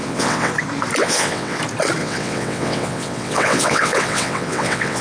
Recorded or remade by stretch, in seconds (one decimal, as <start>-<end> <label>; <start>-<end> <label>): 0.0-0.5 remade; 0.5-1.0 recorded; 1.0-1.6 remade; 1.6-2.0 recorded; 2.0-5.0 remade